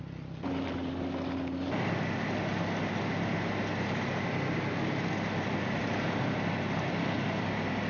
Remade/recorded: recorded